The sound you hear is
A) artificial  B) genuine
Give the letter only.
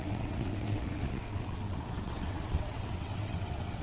A